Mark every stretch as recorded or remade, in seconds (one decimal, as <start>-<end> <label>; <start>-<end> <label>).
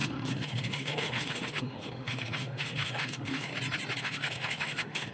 0.0-3.5 remade; 3.5-4.0 recorded; 4.0-5.1 remade